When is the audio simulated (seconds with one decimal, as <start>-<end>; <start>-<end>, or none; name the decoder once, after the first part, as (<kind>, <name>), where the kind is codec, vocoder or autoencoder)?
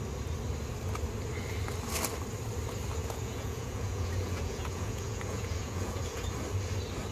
3.0-6.3 (vocoder, Vocos)